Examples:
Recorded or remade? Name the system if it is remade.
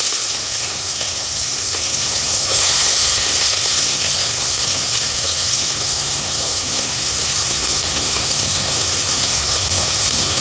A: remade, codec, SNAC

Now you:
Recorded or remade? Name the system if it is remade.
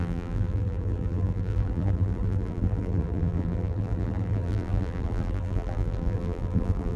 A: remade, vocoder, BigVGAN v2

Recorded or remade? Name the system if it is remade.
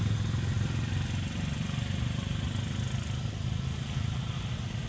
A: recorded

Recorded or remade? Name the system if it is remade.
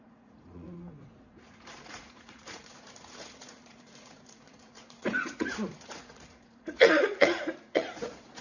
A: remade, vocoder, Vocos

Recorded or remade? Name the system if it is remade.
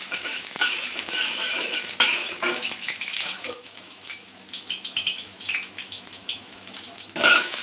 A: remade, autoencoder, DAC-VAE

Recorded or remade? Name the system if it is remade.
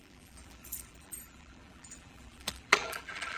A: remade, vocoder, BigVGAN v2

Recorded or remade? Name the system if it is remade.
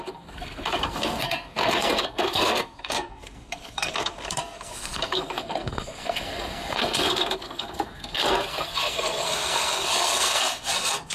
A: remade, codec, SNAC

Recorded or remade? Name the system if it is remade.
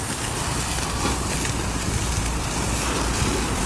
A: remade, vocoder, BigVGAN v2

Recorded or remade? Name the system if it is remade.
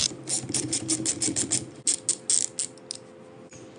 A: recorded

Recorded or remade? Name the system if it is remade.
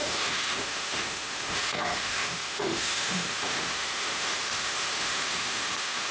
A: remade, autoencoder, DAC-VAE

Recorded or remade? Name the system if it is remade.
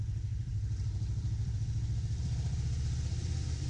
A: remade, vocoder, BigVGAN v2